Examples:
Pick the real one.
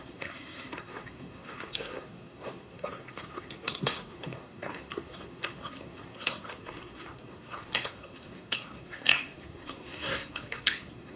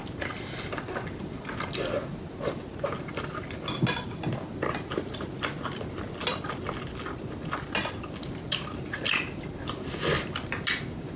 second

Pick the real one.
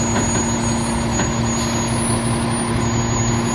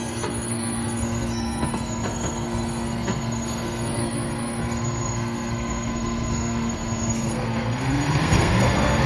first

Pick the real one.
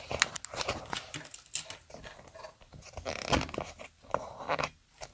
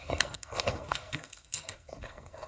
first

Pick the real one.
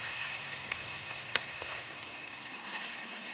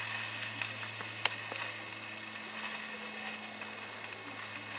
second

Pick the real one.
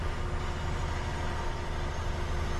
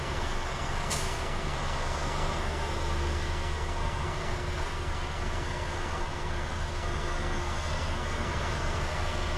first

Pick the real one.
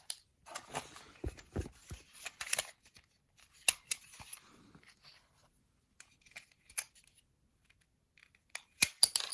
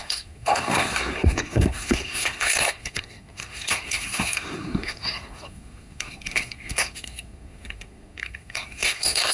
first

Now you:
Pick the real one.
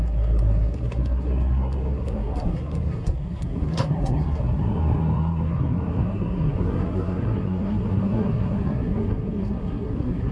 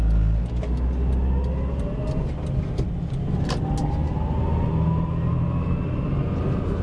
second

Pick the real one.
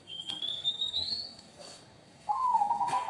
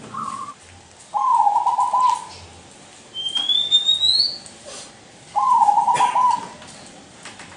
second